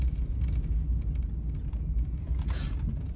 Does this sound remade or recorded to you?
recorded